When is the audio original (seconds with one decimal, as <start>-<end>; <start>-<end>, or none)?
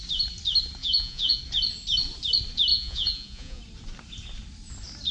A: 0.0-0.8; 1.4-2.7; 3.6-5.1